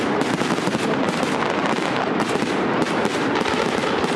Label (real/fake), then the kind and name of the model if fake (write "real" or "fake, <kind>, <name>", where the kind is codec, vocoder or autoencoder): real